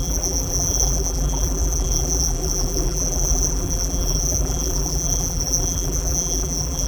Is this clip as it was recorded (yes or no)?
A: no